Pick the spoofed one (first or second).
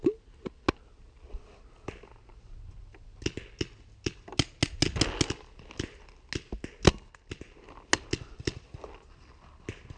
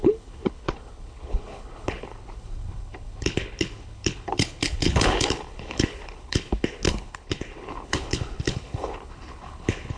second